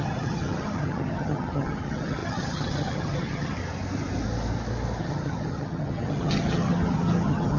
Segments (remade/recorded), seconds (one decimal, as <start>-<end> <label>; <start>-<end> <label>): 0.0-3.6 remade; 3.6-5.0 recorded; 5.0-7.6 remade